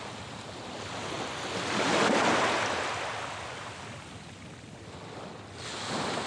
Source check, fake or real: real